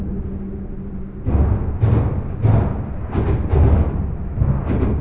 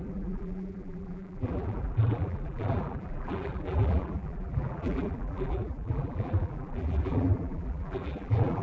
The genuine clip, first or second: first